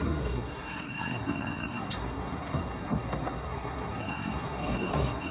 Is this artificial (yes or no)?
yes